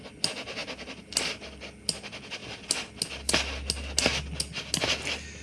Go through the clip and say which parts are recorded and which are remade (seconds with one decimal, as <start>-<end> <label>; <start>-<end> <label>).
0.0-5.4 recorded